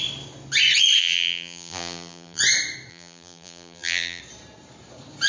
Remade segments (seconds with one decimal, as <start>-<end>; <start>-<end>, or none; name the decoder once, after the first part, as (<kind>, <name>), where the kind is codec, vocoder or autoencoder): 1.0-2.4 (vocoder, BigVGAN v2); 2.9-4.2